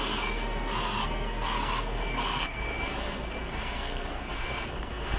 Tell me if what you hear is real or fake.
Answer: fake